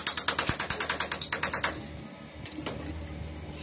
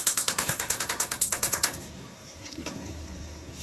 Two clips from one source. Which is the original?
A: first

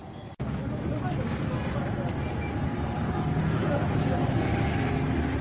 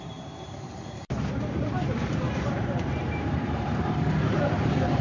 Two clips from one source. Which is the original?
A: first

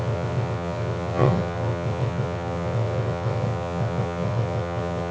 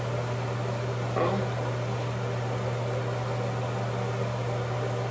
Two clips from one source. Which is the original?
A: second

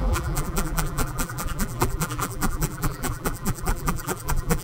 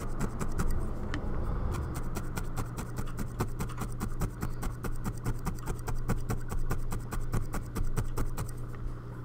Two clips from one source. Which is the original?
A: second